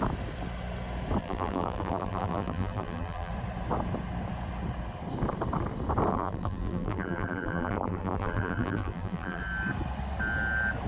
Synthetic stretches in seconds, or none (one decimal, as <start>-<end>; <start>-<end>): 1.2-3.3; 6.1-9.4